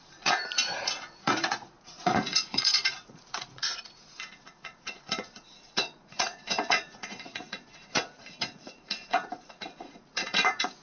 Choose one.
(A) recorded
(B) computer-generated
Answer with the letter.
B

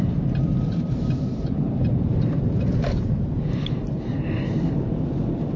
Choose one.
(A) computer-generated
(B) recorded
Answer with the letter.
A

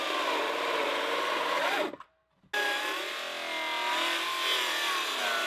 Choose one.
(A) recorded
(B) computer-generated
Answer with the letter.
A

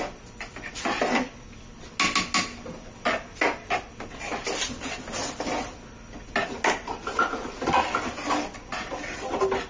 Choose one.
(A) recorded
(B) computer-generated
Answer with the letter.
A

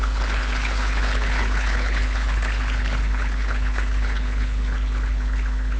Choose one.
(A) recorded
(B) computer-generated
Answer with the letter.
B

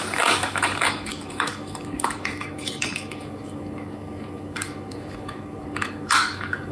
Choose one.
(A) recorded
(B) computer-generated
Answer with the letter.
B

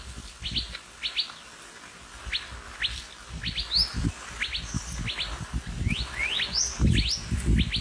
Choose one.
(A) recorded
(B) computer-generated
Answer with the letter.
A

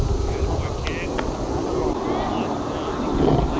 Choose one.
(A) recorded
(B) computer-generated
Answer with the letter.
A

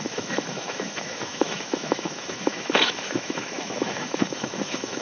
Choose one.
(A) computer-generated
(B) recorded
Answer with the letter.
A